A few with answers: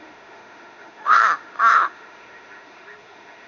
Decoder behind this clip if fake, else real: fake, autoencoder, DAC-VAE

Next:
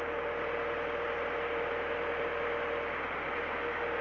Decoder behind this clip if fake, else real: real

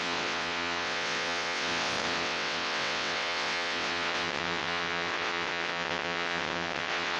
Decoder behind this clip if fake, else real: fake, vocoder, WaveNeXt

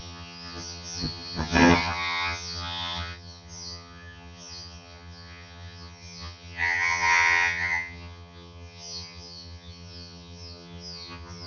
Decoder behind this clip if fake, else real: fake, vocoder, HiFi-GAN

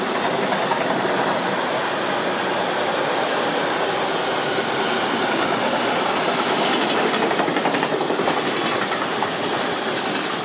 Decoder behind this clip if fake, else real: real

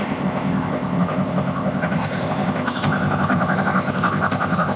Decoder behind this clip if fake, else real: fake, codec, ZipCodec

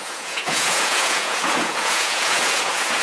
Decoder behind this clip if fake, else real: fake, vocoder, Vocos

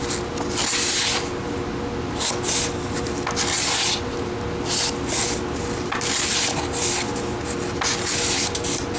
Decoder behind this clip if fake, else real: real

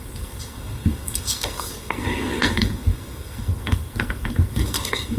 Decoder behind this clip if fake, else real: fake, codec, SNAC